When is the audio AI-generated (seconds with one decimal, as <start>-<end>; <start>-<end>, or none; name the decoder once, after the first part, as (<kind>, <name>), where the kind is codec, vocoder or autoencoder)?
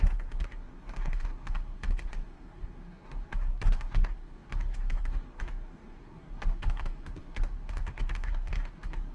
0.0-9.1 (codec, SNAC)